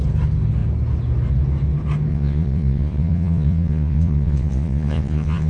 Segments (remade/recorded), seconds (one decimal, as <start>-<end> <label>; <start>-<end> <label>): 0.0-2.1 recorded; 2.1-5.5 remade